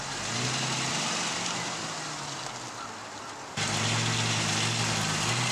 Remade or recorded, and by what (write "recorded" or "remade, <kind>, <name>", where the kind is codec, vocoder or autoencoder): recorded